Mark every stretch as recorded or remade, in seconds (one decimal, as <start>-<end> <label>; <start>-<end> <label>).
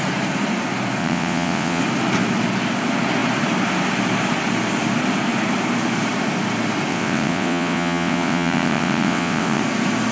0.0-1.0 recorded; 1.0-1.8 remade; 1.8-6.9 recorded; 6.9-9.6 remade; 9.6-10.1 recorded